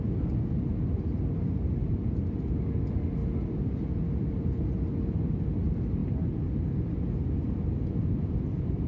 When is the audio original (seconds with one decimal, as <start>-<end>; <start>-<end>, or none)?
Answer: 0.0-8.9